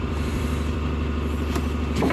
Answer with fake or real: fake